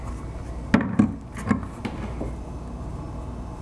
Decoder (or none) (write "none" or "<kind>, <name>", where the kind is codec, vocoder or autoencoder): none